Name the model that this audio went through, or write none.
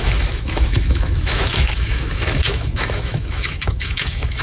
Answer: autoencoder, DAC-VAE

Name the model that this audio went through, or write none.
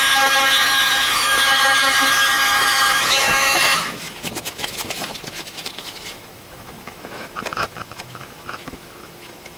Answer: autoencoder, DAC-VAE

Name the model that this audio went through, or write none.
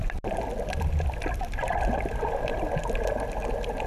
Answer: none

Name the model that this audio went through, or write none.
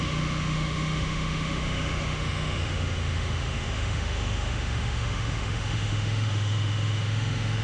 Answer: autoencoder, DAC-VAE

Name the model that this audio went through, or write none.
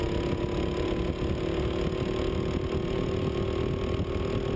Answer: none